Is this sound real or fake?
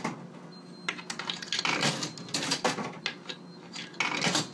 real